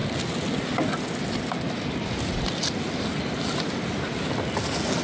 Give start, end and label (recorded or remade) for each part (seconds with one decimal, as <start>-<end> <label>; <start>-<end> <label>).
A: 0.0-5.0 recorded